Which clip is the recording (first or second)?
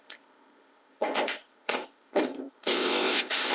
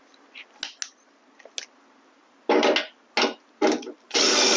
second